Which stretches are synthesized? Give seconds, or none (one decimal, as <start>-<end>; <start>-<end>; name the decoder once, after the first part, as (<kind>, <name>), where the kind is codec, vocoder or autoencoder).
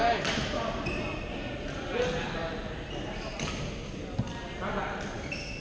none